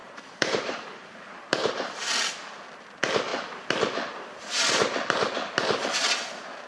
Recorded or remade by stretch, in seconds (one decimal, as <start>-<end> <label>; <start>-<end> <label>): 0.0-2.1 remade; 2.1-6.7 recorded